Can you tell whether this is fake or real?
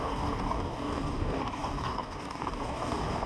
fake